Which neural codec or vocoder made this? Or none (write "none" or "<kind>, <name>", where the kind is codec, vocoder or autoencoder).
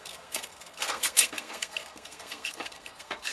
codec, SNAC